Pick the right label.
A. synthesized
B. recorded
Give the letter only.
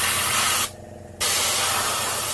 B